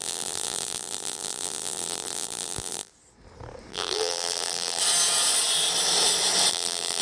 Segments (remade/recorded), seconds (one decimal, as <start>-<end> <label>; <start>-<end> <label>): 0.0-2.9 remade; 2.9-3.7 recorded; 3.7-4.8 remade; 4.8-6.5 recorded; 6.5-7.0 remade